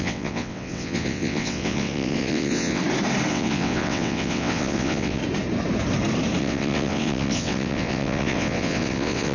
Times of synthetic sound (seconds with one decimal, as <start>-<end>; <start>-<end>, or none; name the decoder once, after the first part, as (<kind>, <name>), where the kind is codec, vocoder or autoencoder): 0.0-2.8 (vocoder, WaveNeXt); 3.3-5.2; 6.4-9.3